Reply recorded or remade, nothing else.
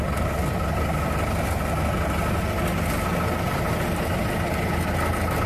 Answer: recorded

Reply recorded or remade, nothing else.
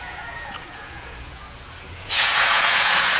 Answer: remade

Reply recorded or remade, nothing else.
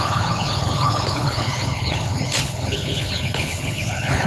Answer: remade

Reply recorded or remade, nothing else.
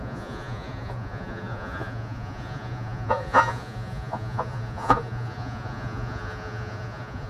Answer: remade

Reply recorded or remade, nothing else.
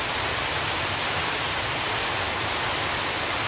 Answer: recorded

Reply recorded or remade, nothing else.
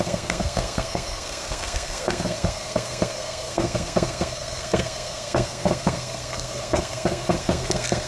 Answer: remade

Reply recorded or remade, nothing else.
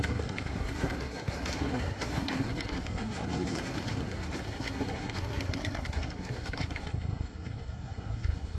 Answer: remade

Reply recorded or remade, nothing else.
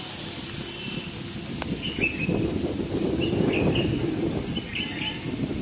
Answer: recorded